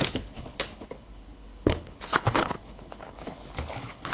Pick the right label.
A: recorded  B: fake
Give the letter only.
B